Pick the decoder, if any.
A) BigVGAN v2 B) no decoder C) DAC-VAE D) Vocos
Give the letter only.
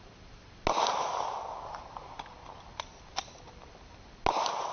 B